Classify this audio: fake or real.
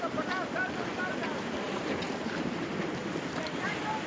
real